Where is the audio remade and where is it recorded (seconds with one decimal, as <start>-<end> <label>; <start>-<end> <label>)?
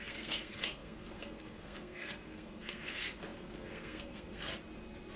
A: 0.0-4.5 remade; 4.5-5.2 recorded